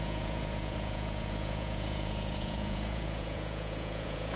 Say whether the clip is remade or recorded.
remade